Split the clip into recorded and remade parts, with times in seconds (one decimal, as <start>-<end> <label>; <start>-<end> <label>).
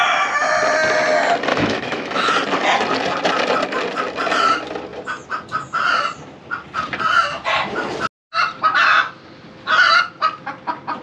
0.0-1.5 recorded; 1.5-2.3 remade; 2.3-11.0 recorded